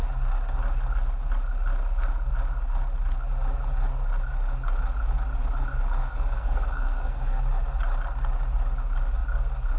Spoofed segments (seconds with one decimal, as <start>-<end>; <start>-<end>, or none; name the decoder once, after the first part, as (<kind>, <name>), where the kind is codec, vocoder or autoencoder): 6.0-7.4 (codec, SNAC)